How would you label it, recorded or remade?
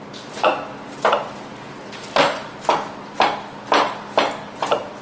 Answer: recorded